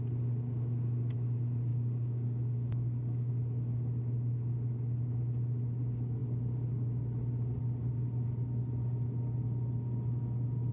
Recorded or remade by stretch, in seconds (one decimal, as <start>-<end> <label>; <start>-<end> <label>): 0.0-1.7 recorded; 1.7-3.3 remade; 3.3-10.7 recorded